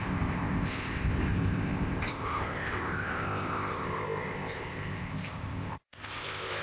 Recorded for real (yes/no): no